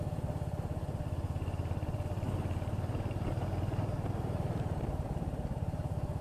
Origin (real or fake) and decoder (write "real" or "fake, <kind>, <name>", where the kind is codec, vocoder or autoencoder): fake, vocoder, BigVGAN v2